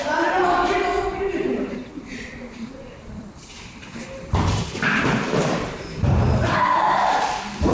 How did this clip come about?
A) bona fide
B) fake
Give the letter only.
B